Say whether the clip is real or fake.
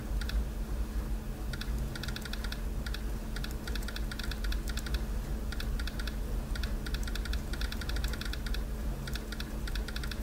real